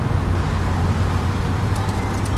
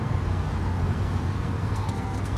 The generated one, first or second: second